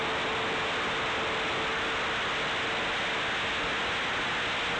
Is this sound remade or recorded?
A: recorded